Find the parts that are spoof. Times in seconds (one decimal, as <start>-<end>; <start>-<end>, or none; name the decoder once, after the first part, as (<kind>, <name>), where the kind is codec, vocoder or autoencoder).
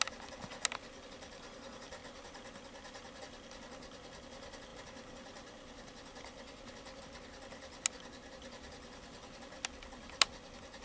none